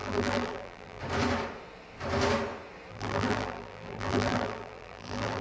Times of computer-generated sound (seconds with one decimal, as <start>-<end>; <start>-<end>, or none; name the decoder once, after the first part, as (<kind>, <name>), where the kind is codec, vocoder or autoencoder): 0.0-1.0 (vocoder, BigVGAN v2); 2.9-5.4